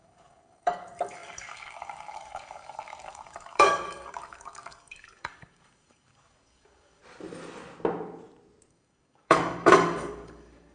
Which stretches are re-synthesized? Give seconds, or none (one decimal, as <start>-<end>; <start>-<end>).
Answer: 0.0-7.0; 8.7-10.7